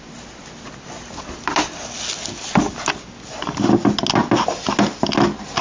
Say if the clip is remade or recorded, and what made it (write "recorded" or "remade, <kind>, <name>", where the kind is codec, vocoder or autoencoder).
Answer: recorded